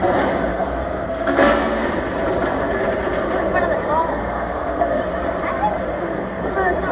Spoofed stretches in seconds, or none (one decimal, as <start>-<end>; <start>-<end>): 0.5-1.9; 4.1-5.0; 5.9-6.5